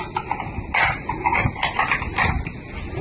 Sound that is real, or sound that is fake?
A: real